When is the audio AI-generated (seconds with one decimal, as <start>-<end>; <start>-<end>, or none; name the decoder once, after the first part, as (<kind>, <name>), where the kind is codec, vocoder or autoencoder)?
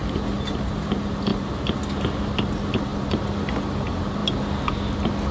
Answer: none